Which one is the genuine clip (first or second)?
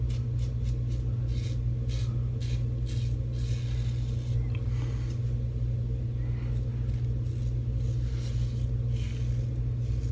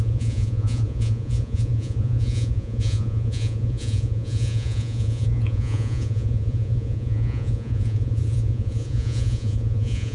first